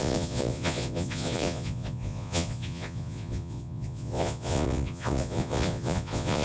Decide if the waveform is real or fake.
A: fake